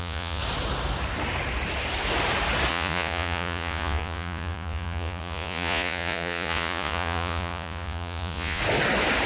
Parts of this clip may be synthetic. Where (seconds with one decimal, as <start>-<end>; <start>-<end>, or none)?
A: 0.0-0.4; 2.7-8.6